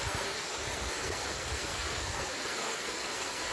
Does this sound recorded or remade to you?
remade